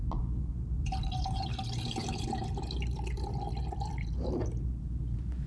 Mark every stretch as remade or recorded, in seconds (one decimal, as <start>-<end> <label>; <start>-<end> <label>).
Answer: 0.0-0.8 recorded; 0.8-5.5 remade